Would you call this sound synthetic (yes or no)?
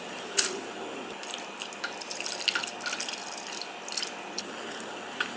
no